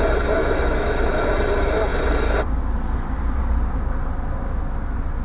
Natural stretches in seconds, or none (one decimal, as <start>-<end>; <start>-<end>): 0.0-0.4; 1.3-5.2